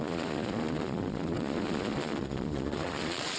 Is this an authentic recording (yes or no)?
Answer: no